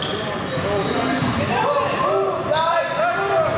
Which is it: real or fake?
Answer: real